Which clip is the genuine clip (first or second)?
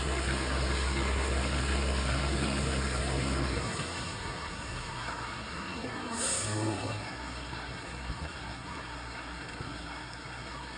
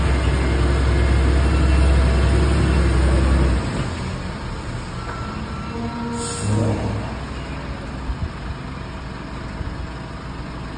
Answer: second